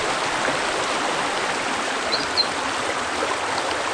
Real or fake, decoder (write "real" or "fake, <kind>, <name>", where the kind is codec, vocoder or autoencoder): real